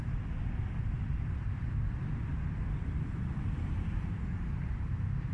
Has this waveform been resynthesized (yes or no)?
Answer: yes